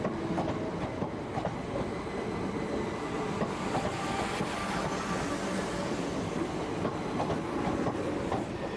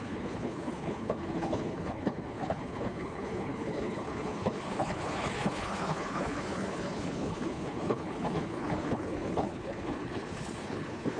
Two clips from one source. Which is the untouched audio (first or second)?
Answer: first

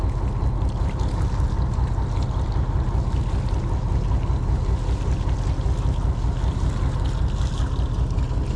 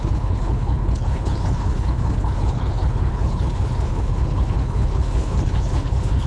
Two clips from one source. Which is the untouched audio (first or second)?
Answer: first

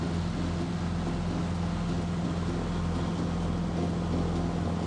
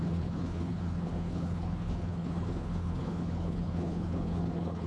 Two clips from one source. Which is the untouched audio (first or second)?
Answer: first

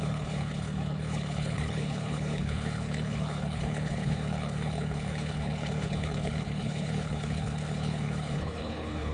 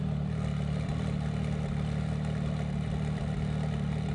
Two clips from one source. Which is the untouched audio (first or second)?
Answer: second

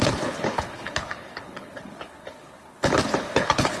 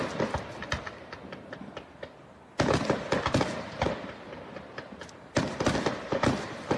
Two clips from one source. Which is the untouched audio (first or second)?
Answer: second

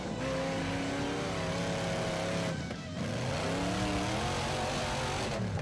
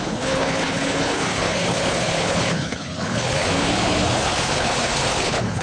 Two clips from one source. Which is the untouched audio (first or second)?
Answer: first